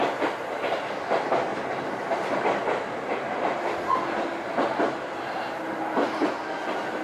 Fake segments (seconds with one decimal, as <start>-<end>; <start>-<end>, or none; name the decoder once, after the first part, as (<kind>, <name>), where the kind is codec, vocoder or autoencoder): none